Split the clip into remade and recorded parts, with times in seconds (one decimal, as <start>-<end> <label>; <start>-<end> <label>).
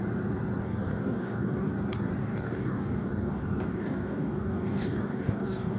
0.0-0.6 recorded; 0.6-1.7 remade; 1.7-2.2 recorded; 2.2-5.8 remade